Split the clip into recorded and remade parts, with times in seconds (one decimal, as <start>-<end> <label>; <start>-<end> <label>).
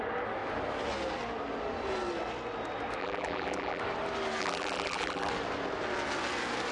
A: 0.0-3.0 recorded; 3.0-3.8 remade; 3.8-4.4 recorded; 4.4-5.3 remade; 5.3-6.7 recorded